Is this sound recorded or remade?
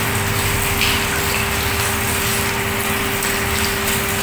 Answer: recorded